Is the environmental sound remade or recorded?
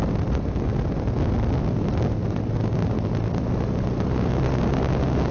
recorded